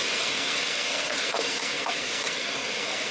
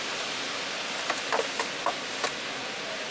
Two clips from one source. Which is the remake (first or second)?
first